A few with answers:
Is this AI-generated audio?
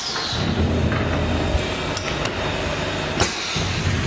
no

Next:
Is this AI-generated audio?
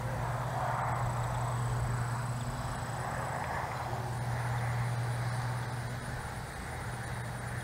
no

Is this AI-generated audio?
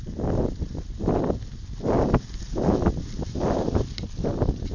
no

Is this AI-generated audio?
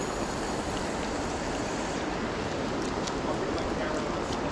no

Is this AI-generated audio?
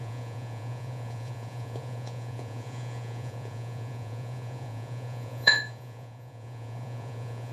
yes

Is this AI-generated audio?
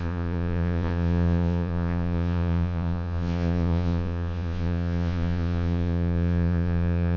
yes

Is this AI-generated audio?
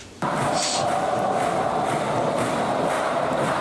no